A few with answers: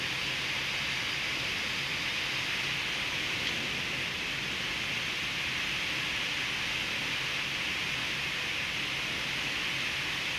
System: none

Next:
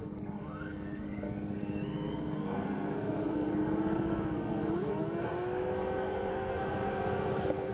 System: codec, SNAC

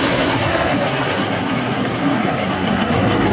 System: codec, SNAC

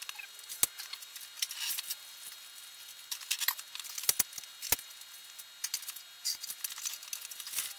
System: none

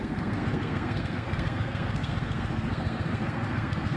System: codec, SNAC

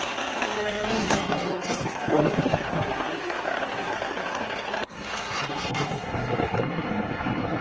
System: codec, SNAC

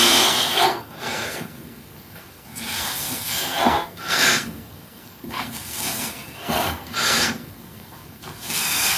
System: codec, SNAC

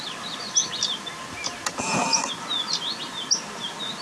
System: none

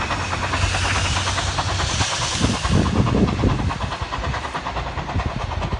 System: none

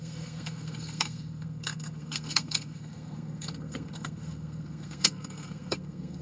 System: codec, SNAC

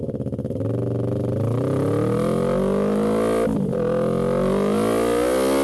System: none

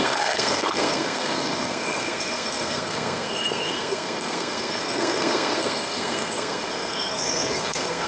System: codec, SNAC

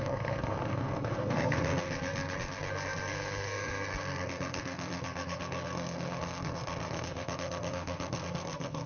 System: codec, SNAC